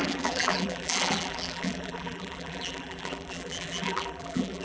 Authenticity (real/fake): fake